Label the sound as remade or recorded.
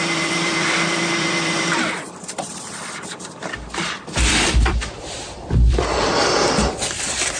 remade